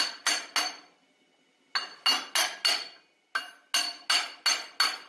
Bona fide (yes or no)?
yes